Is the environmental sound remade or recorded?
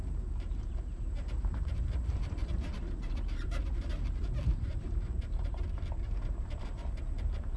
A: remade